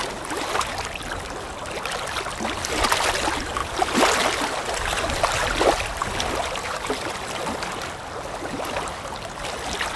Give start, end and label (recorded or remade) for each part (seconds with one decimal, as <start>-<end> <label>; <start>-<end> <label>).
0.0-10.0 recorded